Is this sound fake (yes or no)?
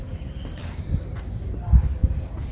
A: yes